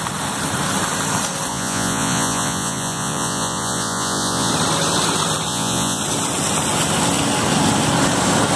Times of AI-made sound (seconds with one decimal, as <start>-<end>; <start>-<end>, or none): 1.5-4.5; 5.5-6.0

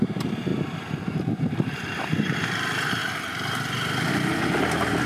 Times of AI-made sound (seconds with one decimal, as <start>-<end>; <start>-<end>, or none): 0.0-3.0; 4.1-5.1

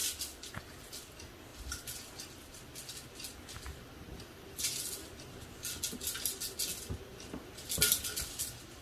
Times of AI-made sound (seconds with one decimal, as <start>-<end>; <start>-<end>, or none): none

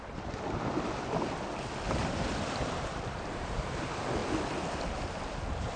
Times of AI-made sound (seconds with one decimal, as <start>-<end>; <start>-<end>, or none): 2.0-3.8